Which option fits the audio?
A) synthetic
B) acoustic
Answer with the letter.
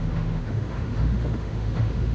A